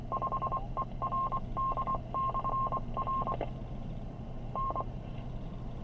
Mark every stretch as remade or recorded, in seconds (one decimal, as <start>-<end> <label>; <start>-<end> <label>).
0.0-3.6 recorded; 3.6-5.1 remade; 5.1-5.8 recorded

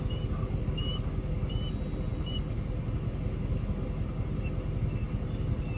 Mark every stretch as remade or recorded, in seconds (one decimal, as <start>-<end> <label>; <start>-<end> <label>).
0.0-5.8 recorded

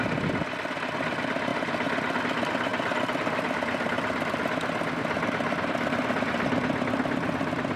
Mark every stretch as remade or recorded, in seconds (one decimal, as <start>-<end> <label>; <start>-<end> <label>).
0.0-7.8 recorded